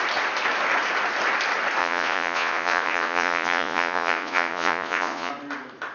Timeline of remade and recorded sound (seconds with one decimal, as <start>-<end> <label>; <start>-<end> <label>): 0.0-1.8 recorded; 1.8-5.3 remade; 5.3-5.9 recorded